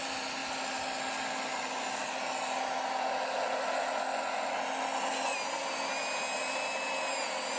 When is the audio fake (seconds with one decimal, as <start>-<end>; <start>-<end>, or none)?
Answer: none